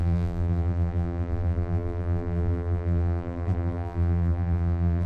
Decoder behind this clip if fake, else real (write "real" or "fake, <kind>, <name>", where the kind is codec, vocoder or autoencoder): fake, vocoder, BigVGAN v2